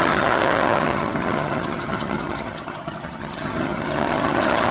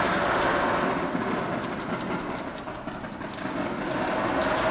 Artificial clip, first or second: first